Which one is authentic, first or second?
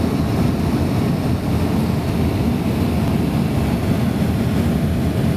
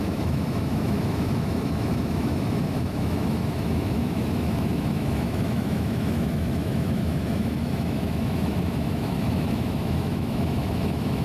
first